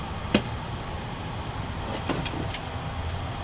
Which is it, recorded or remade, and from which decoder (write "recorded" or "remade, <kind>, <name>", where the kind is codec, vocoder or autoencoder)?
recorded